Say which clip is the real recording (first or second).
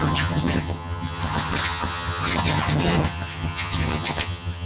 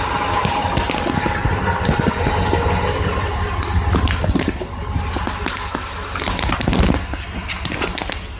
second